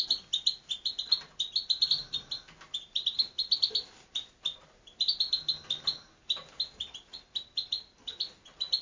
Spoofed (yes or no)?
no